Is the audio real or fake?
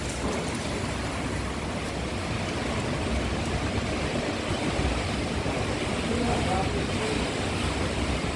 real